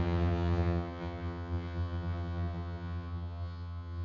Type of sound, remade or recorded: remade